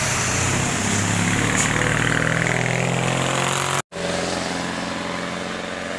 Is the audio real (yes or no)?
yes